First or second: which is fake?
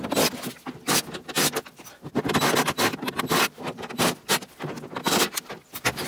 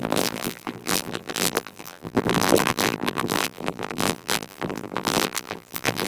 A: second